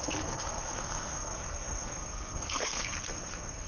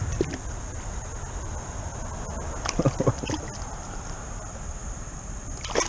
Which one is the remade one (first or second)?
first